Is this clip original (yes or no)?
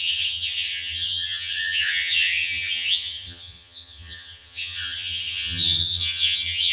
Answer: no